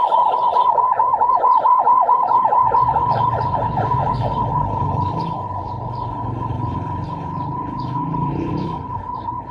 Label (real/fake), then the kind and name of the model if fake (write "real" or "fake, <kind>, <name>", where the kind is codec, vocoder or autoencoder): fake, codec, HILCodec